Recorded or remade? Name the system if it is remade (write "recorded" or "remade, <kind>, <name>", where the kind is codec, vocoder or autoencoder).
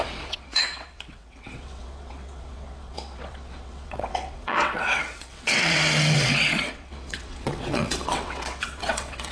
remade, vocoder, WaveNeXt